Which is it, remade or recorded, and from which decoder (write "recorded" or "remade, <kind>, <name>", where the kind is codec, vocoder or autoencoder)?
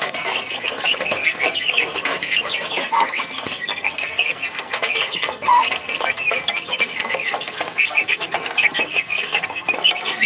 remade, codec, SNAC